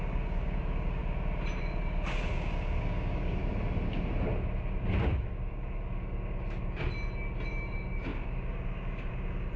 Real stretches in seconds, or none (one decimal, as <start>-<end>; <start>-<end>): 1.0-1.6; 3.4-5.0; 6.8-7.5